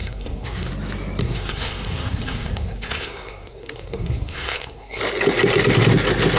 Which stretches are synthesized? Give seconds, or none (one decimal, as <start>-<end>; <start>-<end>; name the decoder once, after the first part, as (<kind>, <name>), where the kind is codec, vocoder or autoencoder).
0.0-0.7 (codec, SNAC); 1.2-5.0